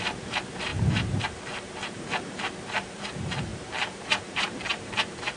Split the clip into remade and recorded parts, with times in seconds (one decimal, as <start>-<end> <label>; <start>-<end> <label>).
0.0-5.4 remade